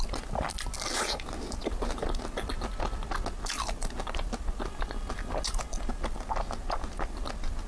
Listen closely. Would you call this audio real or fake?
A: real